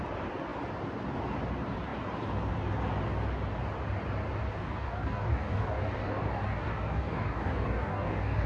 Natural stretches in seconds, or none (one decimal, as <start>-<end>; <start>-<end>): 0.0-4.5

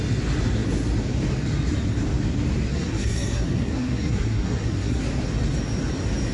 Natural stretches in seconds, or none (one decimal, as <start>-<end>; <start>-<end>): 0.0-2.7; 5.0-6.3

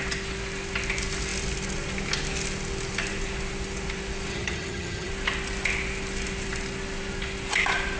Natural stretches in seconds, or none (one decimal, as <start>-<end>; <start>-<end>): 0.0-4.3; 5.1-8.0

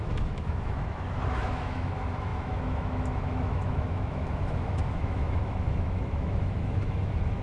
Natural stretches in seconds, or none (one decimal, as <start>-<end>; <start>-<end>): none

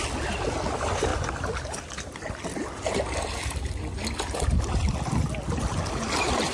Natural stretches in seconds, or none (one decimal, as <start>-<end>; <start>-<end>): 0.0-6.5

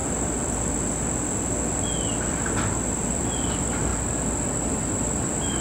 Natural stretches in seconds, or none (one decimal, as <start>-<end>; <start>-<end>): 0.0-2.7; 3.9-4.6

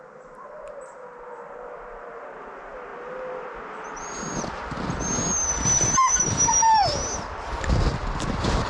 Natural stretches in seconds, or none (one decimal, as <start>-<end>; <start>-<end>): 0.0-2.9; 8.0-8.7

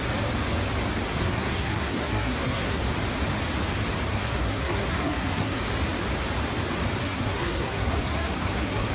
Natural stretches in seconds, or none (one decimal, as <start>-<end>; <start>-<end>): 0.0-1.2; 2.8-4.1; 5.6-7.0